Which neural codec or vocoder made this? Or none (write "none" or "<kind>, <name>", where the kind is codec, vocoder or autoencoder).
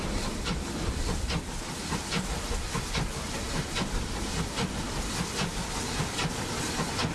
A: none